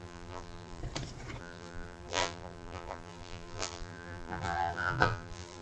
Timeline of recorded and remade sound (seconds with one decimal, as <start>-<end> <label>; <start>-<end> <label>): 0.0-0.8 remade; 0.8-1.4 recorded; 1.4-5.6 remade